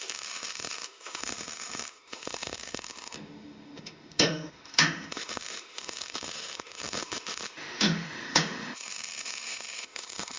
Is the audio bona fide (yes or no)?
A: no